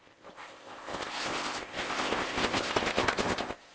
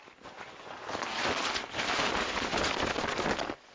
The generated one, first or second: first